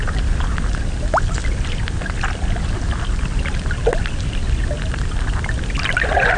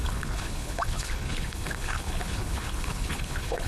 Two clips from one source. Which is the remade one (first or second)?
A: second